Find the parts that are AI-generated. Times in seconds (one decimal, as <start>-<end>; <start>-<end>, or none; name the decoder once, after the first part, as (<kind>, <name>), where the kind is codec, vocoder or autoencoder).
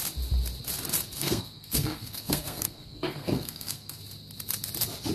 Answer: 1.2-4.0 (codec, SNAC)